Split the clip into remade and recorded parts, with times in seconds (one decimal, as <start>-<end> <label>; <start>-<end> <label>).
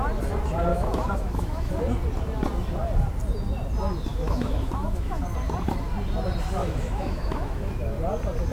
0.0-0.7 recorded; 0.7-1.7 remade; 1.7-4.1 recorded; 4.1-5.2 remade; 5.2-6.6 recorded; 6.6-7.7 remade; 7.7-8.5 recorded